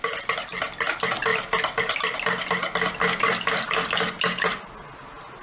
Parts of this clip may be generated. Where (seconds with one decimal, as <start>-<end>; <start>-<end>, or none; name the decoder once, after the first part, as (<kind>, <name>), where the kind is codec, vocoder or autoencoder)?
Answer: none